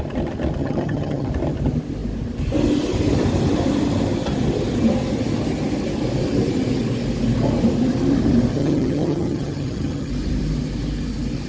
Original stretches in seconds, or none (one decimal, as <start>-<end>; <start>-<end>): 0.0-0.6; 1.3-8.5; 10.1-11.5